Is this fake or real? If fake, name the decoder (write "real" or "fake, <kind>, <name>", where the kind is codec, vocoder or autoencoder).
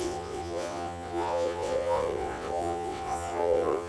fake, vocoder, WaveNeXt